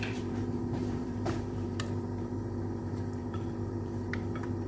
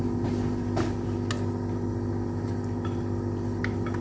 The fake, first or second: first